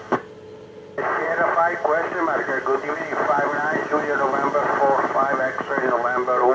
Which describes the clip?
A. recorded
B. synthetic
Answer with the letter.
A